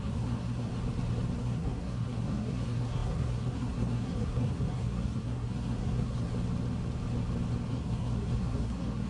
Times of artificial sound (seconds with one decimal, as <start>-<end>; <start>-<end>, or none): 0.0-0.7; 1.4-6.3; 7.7-9.1